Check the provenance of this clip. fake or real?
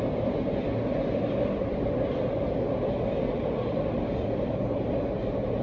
real